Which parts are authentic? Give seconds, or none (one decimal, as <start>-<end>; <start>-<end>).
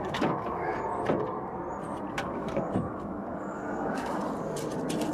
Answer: 0.7-2.1; 4.2-5.1